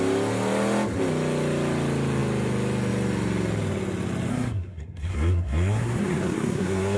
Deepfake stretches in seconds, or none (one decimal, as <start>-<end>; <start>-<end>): 4.3-7.0